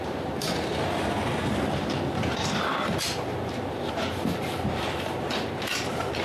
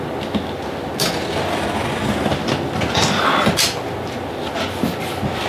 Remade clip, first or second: first